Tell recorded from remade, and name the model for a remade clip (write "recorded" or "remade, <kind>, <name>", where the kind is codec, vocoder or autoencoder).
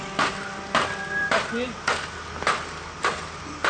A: recorded